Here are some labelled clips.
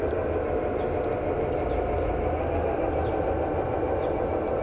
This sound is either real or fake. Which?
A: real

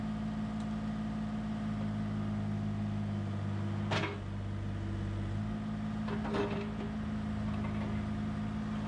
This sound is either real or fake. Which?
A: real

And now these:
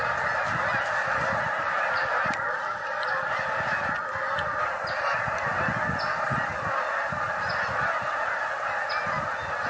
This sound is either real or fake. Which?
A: real